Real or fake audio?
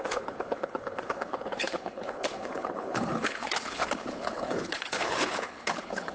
fake